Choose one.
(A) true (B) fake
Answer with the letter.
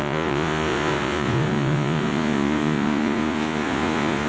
B